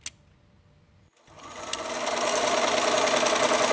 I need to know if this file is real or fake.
real